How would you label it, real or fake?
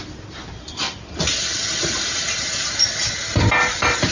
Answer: real